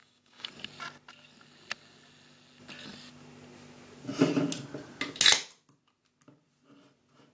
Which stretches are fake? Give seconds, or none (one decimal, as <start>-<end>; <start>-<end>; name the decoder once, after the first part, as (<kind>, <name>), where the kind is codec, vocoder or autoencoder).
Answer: 0.0-0.5 (codec, DAC)